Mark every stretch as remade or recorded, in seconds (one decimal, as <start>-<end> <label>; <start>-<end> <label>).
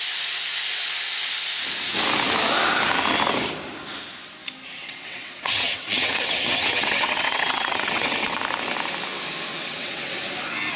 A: 0.0-4.8 recorded; 4.8-8.4 remade; 8.4-9.5 recorded; 9.5-10.1 remade; 10.1-10.8 recorded